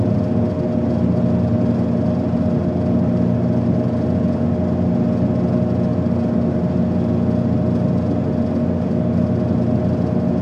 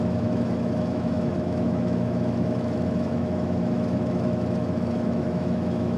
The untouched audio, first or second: first